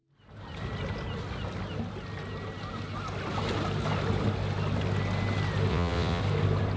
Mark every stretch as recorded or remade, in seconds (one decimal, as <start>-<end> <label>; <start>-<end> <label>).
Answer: 0.0-5.7 recorded; 5.7-6.2 remade; 6.2-6.8 recorded